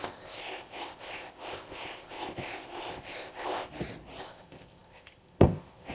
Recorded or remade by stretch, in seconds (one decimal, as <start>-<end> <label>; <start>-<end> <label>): 0.0-3.7 remade; 3.7-4.2 recorded; 4.2-5.9 remade